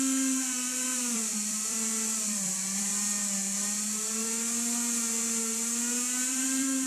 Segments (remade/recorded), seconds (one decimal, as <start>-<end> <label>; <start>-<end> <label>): 0.0-2.9 remade; 2.9-6.3 recorded; 6.3-6.9 remade